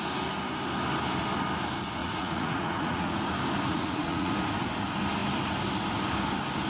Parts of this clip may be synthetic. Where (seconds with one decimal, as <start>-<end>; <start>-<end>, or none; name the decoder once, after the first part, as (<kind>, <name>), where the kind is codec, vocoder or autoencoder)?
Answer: 2.0-3.2 (vocoder, Vocos); 3.7-4.3